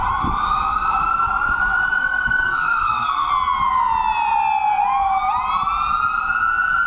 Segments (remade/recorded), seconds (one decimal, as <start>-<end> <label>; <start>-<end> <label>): 0.0-2.0 recorded; 2.0-3.3 remade; 3.3-6.9 recorded